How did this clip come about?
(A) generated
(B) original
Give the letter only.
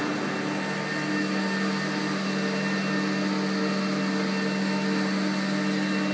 B